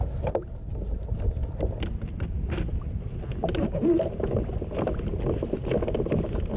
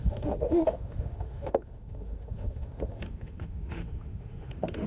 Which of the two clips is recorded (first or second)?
first